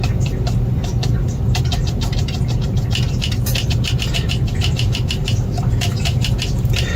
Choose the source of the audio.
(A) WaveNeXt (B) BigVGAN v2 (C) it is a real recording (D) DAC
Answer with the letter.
C